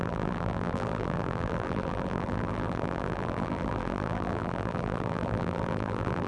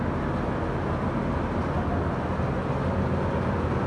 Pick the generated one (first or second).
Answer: first